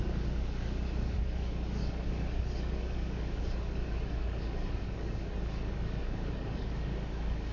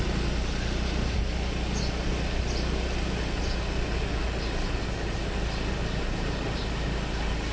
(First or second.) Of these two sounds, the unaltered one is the second